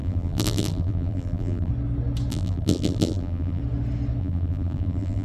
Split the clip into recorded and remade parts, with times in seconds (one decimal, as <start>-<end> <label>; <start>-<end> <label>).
0.0-1.7 remade; 1.7-2.3 recorded; 2.3-3.6 remade; 3.6-4.2 recorded; 4.2-5.2 remade